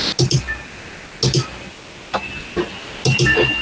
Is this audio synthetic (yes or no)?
no